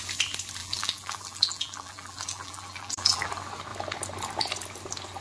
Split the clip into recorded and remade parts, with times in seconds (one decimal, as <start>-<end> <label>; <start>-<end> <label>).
0.0-0.6 recorded; 0.6-3.3 remade; 3.3-5.2 recorded